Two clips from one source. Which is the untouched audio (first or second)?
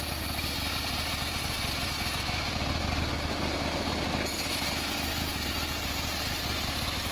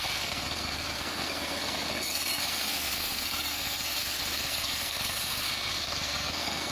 first